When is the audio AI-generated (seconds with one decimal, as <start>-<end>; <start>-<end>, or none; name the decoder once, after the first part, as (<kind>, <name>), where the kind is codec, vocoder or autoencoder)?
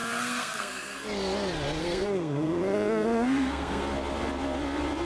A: 0.0-1.0 (codec, SNAC); 1.8-3.8